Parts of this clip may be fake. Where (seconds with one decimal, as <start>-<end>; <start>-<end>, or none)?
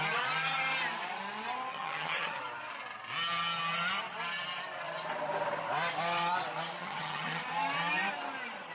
1.7-2.4; 6.8-7.4